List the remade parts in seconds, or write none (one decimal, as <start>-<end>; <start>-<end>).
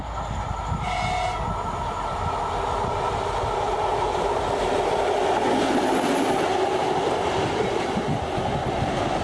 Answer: none